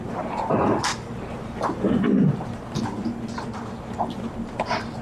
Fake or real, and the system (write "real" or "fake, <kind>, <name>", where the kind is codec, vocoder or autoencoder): fake, vocoder, BigVGAN v2